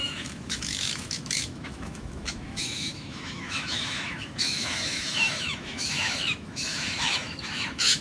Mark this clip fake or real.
fake